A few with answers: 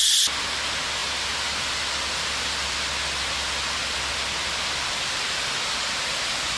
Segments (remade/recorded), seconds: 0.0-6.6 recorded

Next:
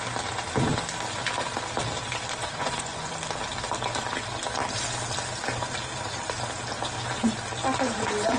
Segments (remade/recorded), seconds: 0.0-2.4 recorded; 2.4-3.1 remade; 3.1-8.4 recorded

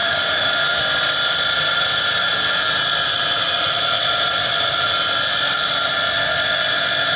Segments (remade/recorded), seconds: 0.0-0.8 remade; 0.8-7.2 recorded

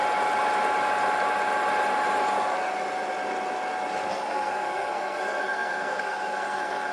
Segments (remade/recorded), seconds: 0.0-4.1 recorded; 4.1-6.9 remade